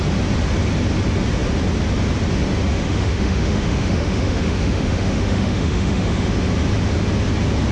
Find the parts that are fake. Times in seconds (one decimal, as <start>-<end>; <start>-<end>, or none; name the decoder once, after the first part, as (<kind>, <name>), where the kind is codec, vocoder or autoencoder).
2.7-6.4 (autoencoder, DAC-VAE)